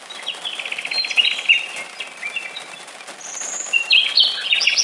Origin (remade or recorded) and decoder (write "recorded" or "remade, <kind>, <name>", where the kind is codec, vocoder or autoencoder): recorded